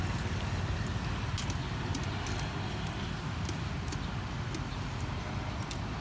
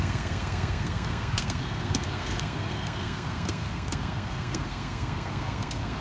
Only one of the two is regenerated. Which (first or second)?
second